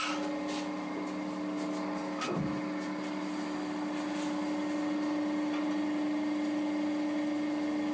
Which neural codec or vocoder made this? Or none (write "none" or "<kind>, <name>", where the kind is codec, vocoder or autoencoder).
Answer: none